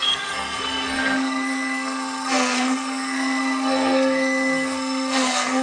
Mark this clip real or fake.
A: fake